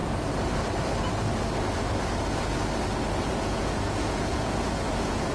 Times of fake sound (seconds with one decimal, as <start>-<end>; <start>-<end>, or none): 3.2-5.3